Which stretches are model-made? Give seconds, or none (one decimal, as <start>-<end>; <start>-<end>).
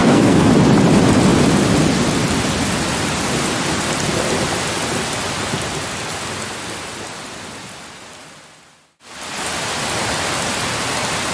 0.0-0.5